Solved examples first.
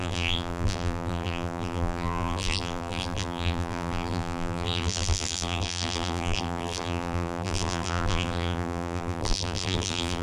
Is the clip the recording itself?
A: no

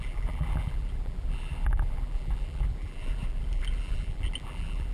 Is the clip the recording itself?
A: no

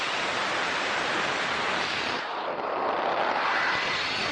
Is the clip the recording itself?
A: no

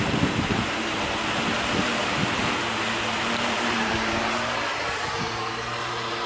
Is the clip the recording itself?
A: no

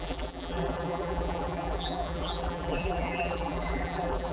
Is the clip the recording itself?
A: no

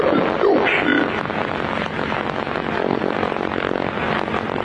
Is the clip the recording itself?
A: yes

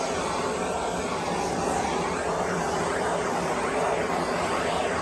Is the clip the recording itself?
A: yes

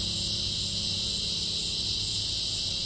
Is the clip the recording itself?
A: no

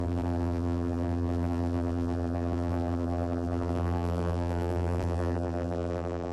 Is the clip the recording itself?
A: no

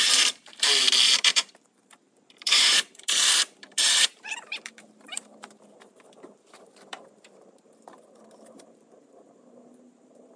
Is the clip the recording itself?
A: no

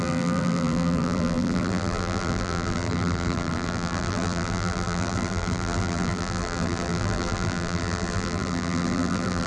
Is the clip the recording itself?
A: no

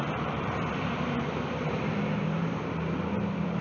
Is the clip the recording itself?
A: no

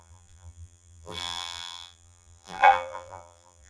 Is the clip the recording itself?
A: no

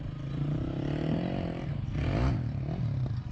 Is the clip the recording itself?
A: yes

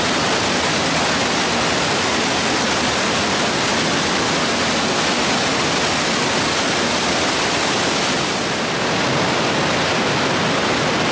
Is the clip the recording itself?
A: yes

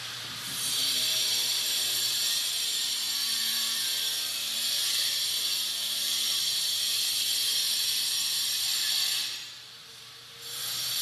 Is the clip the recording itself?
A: no